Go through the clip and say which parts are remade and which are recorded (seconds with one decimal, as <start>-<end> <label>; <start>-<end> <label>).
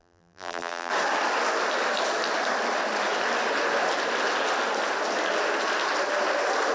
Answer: 0.0-0.9 remade; 0.9-6.7 recorded